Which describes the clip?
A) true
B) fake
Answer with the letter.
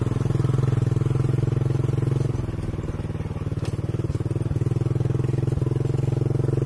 A